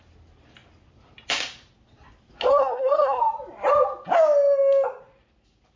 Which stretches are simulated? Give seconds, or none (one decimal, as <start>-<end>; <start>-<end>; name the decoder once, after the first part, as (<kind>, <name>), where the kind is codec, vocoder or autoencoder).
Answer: 2.5-3.2 (codec, SNAC)